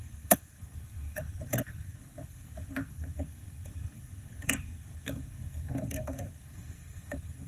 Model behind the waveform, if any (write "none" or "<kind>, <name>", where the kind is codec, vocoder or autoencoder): codec, SNAC